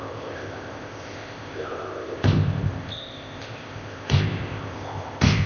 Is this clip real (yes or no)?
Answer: no